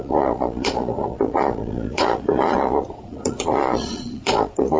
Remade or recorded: remade